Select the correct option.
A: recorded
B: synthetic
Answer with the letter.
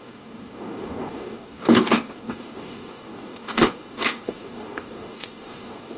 B